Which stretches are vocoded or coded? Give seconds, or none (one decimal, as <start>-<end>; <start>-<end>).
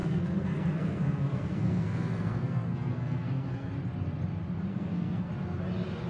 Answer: 0.0-3.7; 4.7-5.3